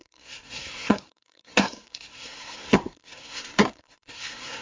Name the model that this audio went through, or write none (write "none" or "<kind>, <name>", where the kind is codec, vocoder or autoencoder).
codec, SNAC